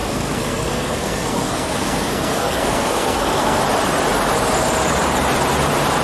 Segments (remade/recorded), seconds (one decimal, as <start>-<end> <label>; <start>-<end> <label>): 0.0-3.6 remade; 3.6-6.0 recorded